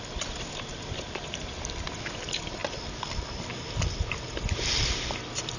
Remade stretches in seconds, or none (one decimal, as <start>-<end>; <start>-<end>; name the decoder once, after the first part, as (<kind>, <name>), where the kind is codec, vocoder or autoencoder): none